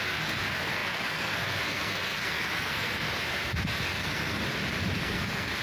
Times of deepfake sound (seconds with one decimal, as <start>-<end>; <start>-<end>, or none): 0.0-4.4; 5.0-5.6